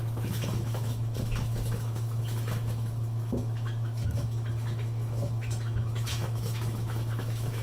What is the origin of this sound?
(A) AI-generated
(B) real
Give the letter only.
A